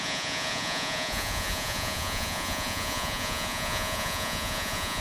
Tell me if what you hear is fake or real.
fake